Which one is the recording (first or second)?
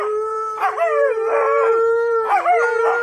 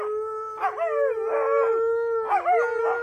second